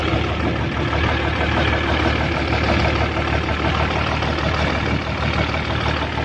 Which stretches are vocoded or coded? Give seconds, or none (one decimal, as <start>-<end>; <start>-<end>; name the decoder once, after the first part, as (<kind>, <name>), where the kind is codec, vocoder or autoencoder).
none